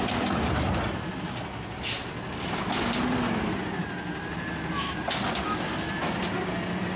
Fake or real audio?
real